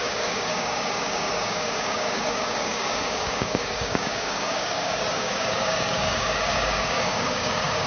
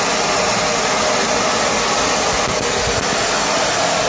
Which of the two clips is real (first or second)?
second